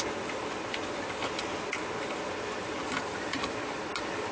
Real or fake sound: real